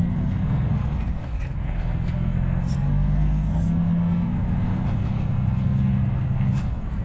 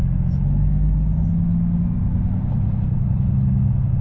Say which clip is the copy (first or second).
first